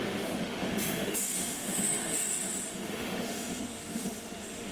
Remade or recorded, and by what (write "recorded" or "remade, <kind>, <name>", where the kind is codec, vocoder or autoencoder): remade, autoencoder, DAC-VAE